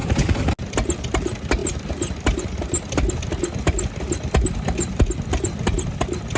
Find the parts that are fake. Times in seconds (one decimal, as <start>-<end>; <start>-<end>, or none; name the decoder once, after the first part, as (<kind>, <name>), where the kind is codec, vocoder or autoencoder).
none